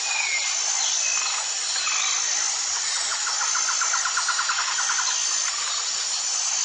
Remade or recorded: recorded